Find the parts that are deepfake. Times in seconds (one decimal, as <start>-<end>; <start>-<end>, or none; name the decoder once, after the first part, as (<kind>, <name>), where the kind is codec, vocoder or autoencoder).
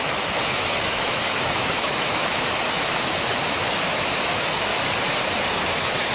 0.0-4.7 (autoencoder, DAC-VAE); 5.5-6.1